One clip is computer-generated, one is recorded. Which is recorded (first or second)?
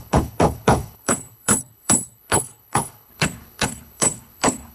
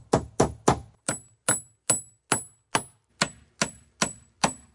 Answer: second